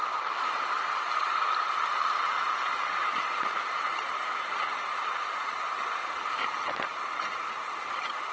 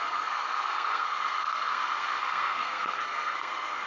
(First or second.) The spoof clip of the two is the second